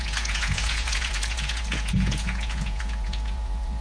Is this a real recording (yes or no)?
no